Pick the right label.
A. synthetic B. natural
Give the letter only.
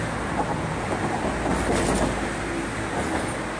B